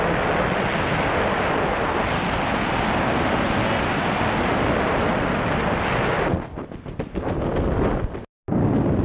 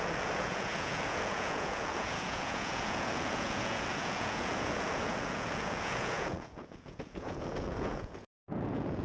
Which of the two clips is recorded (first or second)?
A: first